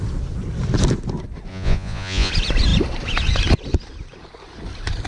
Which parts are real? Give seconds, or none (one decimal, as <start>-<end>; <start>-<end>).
0.0-1.5; 2.3-5.1